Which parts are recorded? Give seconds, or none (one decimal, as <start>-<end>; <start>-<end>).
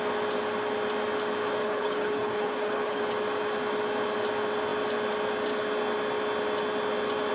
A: 0.0-1.6; 3.0-7.3